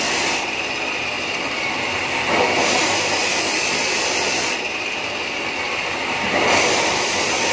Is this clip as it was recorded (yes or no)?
no